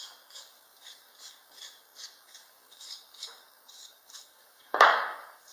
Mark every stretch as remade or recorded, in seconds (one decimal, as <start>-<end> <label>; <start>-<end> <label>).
0.0-5.5 remade